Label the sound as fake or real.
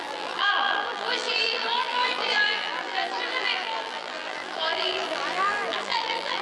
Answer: fake